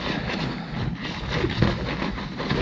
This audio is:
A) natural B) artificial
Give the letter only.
A